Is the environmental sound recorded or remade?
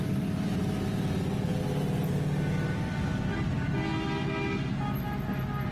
recorded